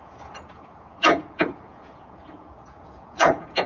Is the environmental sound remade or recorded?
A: remade